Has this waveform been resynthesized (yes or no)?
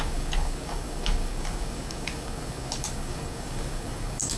yes